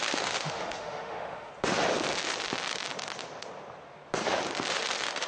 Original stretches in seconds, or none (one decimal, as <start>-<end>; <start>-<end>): 1.5-4.7